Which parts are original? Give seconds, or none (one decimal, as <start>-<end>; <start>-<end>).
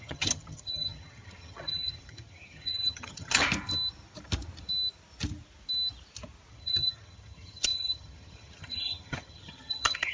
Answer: 3.4-6.5